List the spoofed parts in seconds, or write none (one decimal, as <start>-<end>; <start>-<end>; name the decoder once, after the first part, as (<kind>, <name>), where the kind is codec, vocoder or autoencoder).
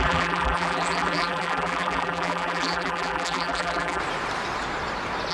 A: 0.0-4.0 (vocoder, BigVGAN v2)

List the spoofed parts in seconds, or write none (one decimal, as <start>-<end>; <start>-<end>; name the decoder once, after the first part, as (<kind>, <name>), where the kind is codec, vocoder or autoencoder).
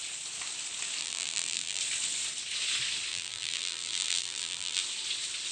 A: 1.0-1.8 (vocoder, BigVGAN v2); 3.1-4.8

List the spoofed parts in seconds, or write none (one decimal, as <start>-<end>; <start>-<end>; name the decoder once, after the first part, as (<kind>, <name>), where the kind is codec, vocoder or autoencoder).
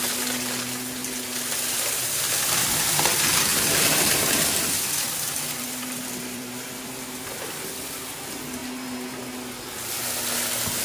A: 3.5-8.0 (vocoder, BigVGAN v2)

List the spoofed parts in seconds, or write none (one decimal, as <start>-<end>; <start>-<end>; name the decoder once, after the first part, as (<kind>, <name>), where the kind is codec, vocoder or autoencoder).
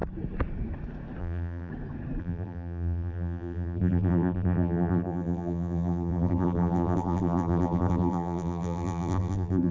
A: 1.2-1.7 (vocoder, BigVGAN v2); 2.2-9.7